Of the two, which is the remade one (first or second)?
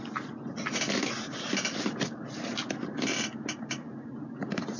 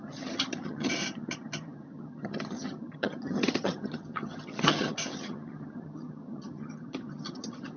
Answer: second